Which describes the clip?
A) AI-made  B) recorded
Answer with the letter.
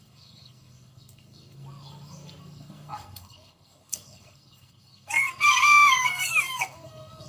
A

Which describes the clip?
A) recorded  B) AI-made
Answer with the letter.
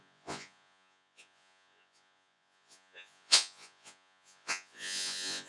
B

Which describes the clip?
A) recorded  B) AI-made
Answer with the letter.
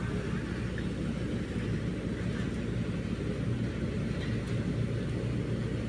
A